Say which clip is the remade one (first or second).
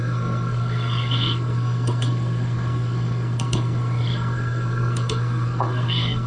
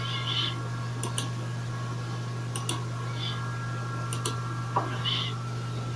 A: first